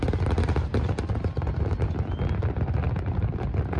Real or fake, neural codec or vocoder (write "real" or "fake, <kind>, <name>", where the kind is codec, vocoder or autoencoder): real